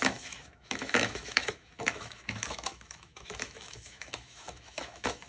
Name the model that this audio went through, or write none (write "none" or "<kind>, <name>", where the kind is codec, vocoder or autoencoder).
autoencoder, DAC-VAE